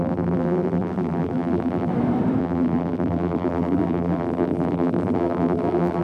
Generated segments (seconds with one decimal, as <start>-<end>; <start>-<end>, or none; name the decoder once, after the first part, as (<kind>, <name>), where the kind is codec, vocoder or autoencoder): 0.0-1.9 (vocoder, BigVGAN v2); 2.4-6.0

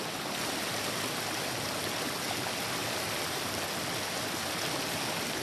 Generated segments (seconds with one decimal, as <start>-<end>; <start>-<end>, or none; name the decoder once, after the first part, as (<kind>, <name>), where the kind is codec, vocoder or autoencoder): none

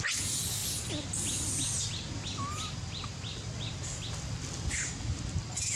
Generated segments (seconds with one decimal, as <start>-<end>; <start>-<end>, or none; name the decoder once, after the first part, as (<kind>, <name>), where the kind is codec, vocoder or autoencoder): none

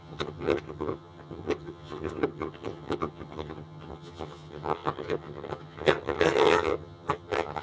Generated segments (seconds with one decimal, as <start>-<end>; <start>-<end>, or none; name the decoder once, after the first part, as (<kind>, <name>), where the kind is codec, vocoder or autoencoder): 0.0-7.6 (vocoder, HiFi-GAN)

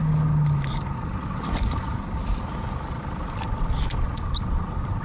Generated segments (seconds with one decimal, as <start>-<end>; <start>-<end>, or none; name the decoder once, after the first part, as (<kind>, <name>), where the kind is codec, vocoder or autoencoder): none

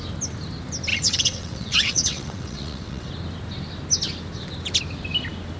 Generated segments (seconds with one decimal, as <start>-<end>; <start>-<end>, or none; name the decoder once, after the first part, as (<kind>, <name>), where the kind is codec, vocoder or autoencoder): 0.9-3.1 (vocoder, WaveNeXt)